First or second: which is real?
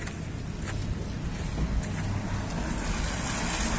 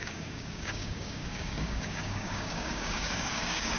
first